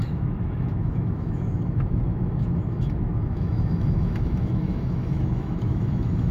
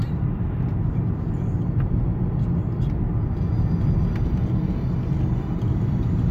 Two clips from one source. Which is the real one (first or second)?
second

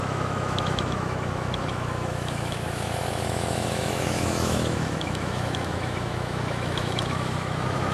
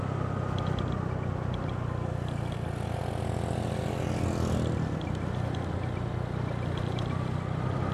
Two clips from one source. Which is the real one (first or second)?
second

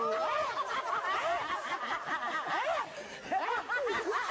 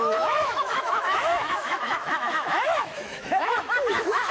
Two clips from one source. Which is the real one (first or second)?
first